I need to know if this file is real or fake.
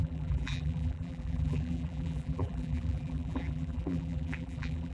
fake